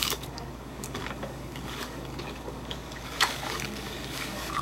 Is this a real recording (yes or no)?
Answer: no